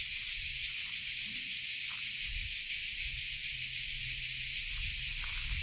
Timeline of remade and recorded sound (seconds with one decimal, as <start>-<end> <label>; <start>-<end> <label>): 0.0-0.6 recorded; 0.6-1.2 remade; 1.2-5.6 recorded